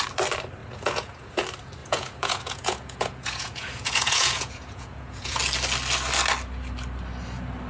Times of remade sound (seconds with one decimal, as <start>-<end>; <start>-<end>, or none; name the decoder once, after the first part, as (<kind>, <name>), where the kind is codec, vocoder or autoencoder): 0.6-1.4 (vocoder, Vocos); 1.8-5.4